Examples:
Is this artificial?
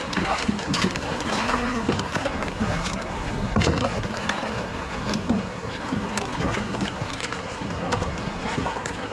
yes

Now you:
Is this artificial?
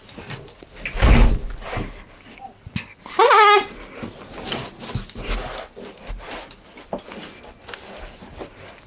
no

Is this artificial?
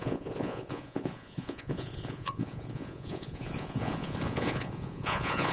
yes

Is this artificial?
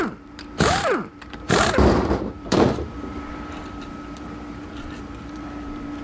yes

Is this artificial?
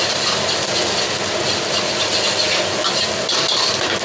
no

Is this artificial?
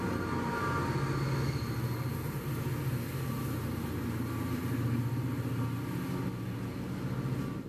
no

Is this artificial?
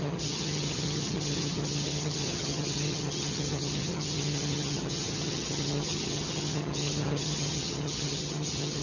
yes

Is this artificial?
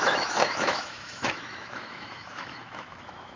yes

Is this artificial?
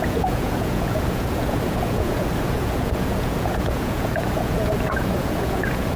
yes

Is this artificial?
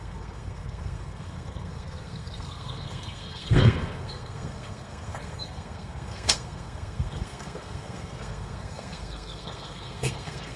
yes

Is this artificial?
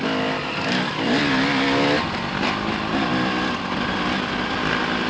no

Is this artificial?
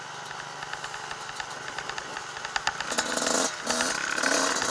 no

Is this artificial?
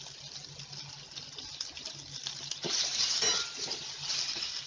no